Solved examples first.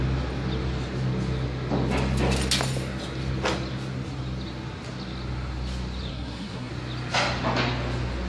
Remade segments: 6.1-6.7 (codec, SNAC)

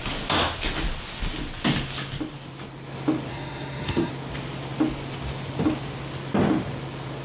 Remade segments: 3.3-4.1 (codec, SNAC)

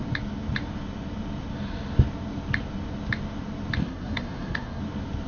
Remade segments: 3.8-4.8 (codec, SNAC)

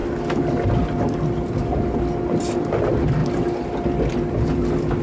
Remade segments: none

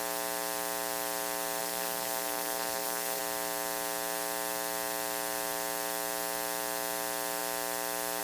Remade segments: 1.6-3.2 (codec, SNAC)

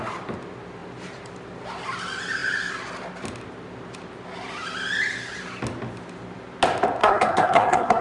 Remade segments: 7.0-8.0 (codec, SNAC)

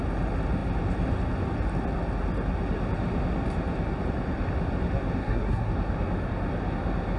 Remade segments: 5.2-5.7 (codec, SNAC)